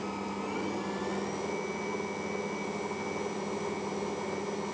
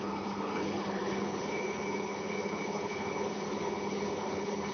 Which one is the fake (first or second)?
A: second